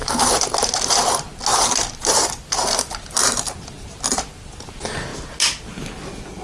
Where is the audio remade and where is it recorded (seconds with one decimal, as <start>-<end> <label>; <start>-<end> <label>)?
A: 0.0-1.5 recorded; 1.5-2.5 remade; 2.5-6.4 recorded

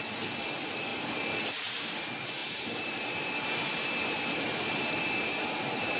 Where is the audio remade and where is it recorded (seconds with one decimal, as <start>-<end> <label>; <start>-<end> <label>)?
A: 0.0-0.9 recorded; 0.9-1.8 remade; 1.8-2.4 recorded; 2.4-6.0 remade

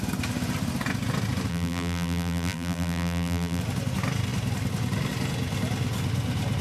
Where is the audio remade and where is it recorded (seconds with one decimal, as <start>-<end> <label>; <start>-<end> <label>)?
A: 0.0-1.5 recorded; 1.5-3.6 remade; 3.6-6.6 recorded

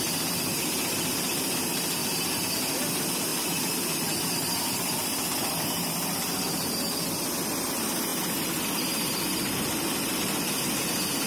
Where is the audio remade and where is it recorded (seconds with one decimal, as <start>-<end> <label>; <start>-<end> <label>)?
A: 0.0-11.3 recorded

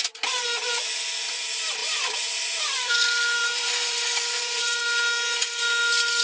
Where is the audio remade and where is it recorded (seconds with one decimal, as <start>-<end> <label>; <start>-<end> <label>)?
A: 0.0-1.8 recorded; 1.8-2.9 remade; 2.9-3.4 recorded; 3.4-4.8 remade; 4.8-6.2 recorded

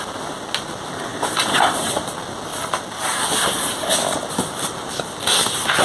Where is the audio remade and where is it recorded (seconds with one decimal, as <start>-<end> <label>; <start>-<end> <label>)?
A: 0.0-1.1 recorded; 1.1-1.9 remade; 1.9-5.8 recorded